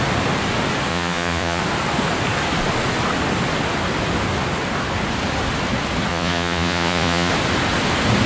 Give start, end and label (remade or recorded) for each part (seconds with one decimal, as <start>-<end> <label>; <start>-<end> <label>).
0.0-0.9 recorded; 0.9-1.6 remade; 1.6-6.1 recorded; 6.1-7.3 remade; 7.3-8.3 recorded